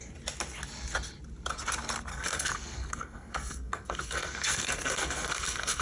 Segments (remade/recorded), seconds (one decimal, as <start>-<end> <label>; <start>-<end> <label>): 0.0-2.1 recorded; 2.1-5.8 remade